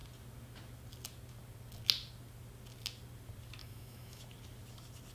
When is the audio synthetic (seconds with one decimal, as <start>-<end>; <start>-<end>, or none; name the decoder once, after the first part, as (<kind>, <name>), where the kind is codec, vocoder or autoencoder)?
3.6-4.2 (autoencoder, DAC-VAE)